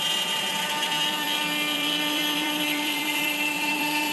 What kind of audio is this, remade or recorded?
remade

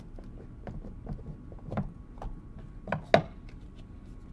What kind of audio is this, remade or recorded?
recorded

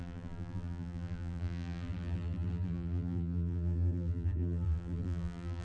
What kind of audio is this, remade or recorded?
remade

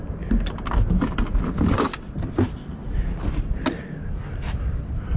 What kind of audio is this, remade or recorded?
recorded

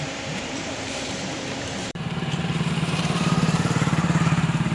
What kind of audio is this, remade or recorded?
remade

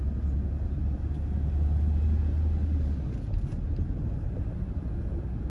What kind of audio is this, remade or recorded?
recorded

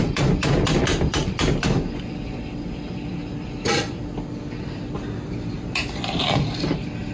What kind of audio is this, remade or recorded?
recorded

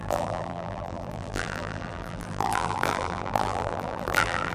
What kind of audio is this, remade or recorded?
remade